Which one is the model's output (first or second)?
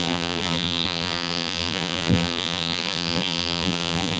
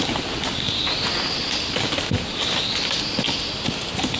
first